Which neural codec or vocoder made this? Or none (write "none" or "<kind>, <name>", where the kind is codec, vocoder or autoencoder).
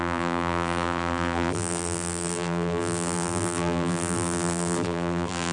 vocoder, BigVGAN v2